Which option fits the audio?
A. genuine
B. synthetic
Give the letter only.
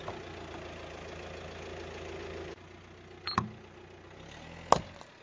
A